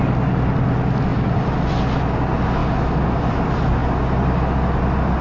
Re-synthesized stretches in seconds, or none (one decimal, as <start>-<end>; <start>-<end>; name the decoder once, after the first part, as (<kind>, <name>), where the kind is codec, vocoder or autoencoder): none